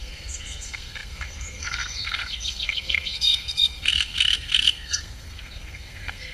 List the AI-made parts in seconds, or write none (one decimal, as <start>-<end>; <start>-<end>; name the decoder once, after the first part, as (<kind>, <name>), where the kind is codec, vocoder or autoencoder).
0.0-6.3 (codec, SNAC)